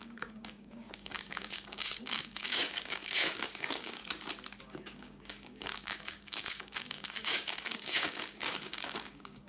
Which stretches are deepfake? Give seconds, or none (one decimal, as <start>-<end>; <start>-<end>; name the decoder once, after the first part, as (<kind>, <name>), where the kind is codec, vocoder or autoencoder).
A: 0.0-4.0 (codec, DAC); 4.6-9.5